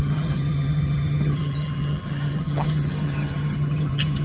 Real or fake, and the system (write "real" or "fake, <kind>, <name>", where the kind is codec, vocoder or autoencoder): fake, vocoder, HiFi-GAN